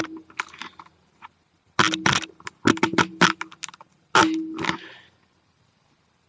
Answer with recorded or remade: recorded